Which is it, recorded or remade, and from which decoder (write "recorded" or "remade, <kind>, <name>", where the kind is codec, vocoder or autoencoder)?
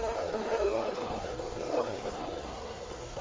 remade, codec, SNAC